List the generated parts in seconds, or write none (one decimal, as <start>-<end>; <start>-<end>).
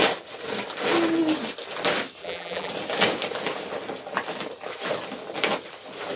2.2-2.7